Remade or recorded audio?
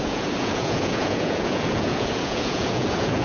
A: remade